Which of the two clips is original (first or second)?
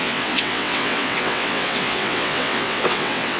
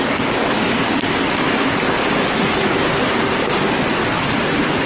second